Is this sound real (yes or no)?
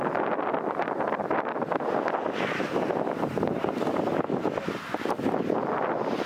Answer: yes